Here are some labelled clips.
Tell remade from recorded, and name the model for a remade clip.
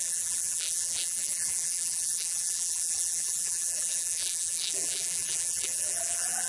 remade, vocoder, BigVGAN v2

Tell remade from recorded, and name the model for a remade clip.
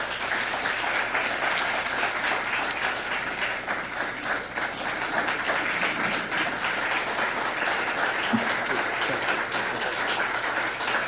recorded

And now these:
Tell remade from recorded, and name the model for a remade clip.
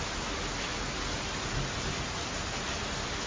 recorded